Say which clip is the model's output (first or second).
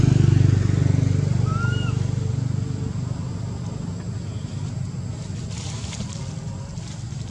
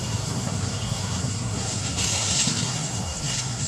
second